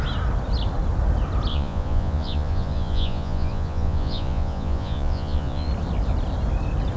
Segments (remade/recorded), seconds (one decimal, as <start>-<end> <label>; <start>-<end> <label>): 0.0-1.5 recorded; 1.5-5.7 remade; 5.7-7.0 recorded

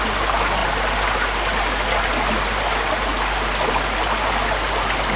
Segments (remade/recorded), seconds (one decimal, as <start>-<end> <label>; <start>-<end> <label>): 0.0-5.2 recorded

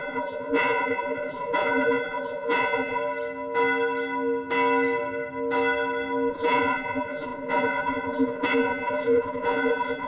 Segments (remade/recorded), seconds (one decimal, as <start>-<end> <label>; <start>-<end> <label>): 0.0-3.0 remade; 3.0-6.3 recorded; 6.3-10.1 remade

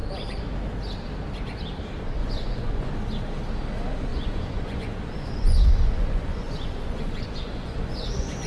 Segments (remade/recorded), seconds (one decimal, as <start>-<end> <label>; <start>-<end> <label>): 0.0-2.2 recorded; 2.2-2.9 remade; 2.9-4.1 recorded; 4.1-8.5 remade

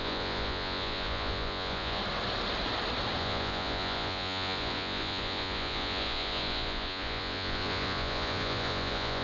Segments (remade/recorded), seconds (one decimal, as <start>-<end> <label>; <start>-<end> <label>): 0.0-2.0 remade; 2.0-3.2 recorded; 3.2-9.2 remade

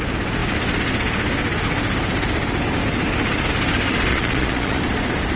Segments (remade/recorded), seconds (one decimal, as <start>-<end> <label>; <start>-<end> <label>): 0.0-4.1 recorded; 4.1-4.8 remade; 4.8-5.4 recorded

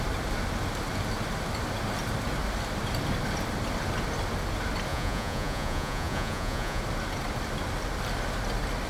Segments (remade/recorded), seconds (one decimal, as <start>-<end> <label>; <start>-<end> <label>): 0.0-4.9 recorded; 4.9-6.8 remade; 6.8-8.9 recorded

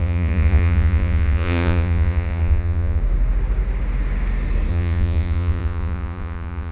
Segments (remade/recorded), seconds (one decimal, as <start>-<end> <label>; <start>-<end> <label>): 0.0-3.0 remade; 3.0-4.7 recorded; 4.7-6.7 remade